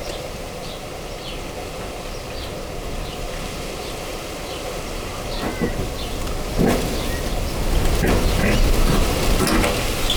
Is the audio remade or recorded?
recorded